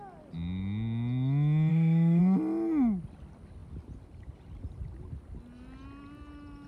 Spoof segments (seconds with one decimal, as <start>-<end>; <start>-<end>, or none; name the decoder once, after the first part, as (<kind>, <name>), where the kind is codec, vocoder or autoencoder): 1.7-2.2 (autoencoder, DAC-VAE)

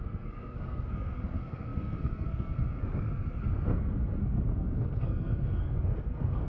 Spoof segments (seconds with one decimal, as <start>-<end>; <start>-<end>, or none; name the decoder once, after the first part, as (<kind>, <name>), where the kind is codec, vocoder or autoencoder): 0.0-6.5 (codec, SNAC)

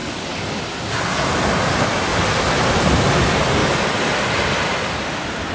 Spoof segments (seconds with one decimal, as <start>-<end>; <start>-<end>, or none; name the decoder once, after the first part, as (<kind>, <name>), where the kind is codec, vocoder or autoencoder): 0.0-0.6 (codec, DAC)

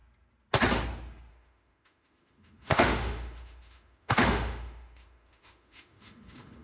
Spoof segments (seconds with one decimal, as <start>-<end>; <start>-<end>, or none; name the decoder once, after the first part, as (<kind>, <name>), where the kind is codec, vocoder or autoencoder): 1.3-6.6 (autoencoder, DAC-VAE)

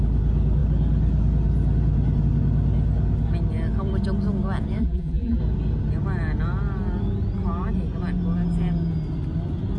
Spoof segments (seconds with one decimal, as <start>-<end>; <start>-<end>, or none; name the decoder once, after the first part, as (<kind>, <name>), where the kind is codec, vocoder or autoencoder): 4.8-5.4 (vocoder, BigVGAN v2)

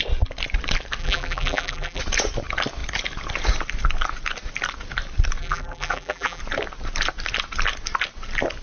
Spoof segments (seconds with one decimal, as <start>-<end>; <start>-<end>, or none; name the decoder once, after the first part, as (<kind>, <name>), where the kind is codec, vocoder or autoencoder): 1.0-2.0 (vocoder, BigVGAN v2); 5.4-6.4

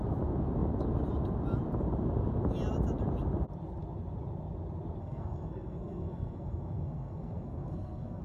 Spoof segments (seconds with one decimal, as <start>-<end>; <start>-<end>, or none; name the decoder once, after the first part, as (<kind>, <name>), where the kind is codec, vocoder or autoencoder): 5.0-8.2 (codec, SNAC)

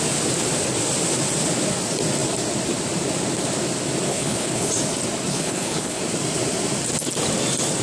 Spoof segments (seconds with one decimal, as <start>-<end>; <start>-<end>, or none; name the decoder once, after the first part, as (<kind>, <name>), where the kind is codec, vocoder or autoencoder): 4.1-4.7 (codec, HILCodec); 5.3-6.0